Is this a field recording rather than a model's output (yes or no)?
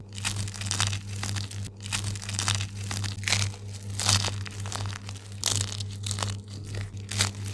yes